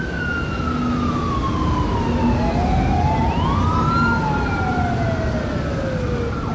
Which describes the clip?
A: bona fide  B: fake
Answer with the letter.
A